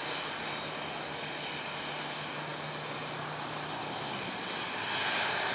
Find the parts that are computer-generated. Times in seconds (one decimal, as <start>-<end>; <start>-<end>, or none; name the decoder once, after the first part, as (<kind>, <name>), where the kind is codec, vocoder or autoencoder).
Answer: none